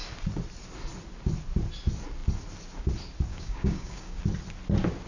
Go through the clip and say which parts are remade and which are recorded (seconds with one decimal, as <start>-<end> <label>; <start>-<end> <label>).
0.0-3.3 recorded; 3.3-4.2 remade; 4.2-5.1 recorded

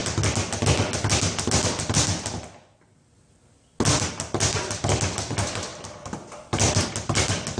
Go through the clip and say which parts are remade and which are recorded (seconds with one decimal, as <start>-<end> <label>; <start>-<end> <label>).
0.0-7.6 recorded